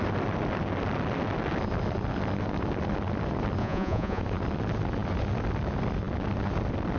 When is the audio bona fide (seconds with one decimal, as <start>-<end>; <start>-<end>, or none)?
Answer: 0.0-3.6; 4.2-7.0